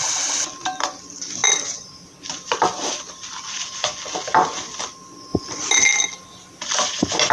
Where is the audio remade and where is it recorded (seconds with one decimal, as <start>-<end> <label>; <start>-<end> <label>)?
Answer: 0.0-7.3 recorded